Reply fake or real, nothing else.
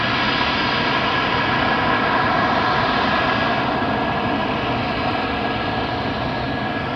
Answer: real